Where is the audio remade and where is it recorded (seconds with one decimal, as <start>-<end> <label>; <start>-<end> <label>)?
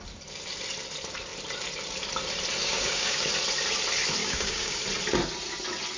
0.0-2.6 recorded; 2.6-3.3 remade; 3.3-4.2 recorded; 4.2-4.8 remade; 4.8-6.0 recorded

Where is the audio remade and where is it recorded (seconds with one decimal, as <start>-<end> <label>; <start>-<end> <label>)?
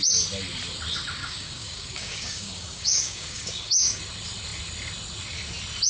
0.0-1.2 recorded; 1.2-4.0 remade; 4.0-5.9 recorded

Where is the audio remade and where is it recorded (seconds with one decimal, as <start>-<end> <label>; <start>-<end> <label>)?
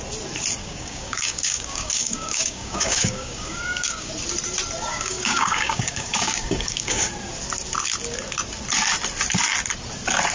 0.0-0.6 recorded; 0.6-4.1 remade; 4.1-4.9 recorded; 4.9-7.1 remade; 7.1-10.3 recorded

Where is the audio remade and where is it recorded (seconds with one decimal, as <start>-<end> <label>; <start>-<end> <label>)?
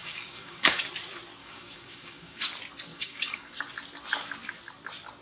0.0-0.8 remade; 0.8-1.4 recorded; 1.4-2.4 remade; 2.4-2.9 recorded; 2.9-3.6 remade; 3.6-5.2 recorded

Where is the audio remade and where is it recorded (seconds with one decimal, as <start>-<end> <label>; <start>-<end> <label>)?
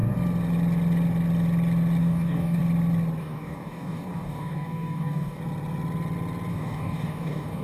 0.0-2.0 recorded; 2.0-2.6 remade; 2.6-3.2 recorded; 3.2-5.4 remade; 5.4-6.5 recorded; 6.5-7.6 remade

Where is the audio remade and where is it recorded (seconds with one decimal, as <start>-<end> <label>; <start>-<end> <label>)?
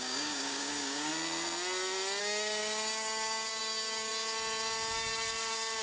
0.0-1.1 remade; 1.1-2.2 recorded; 2.2-4.1 remade; 4.1-5.8 recorded